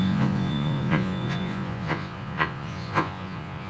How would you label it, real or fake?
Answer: fake